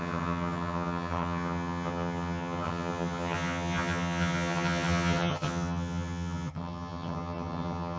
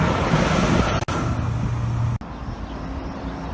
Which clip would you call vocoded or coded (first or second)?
first